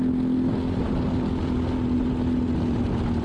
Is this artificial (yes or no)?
no